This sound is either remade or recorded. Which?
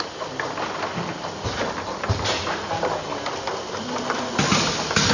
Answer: recorded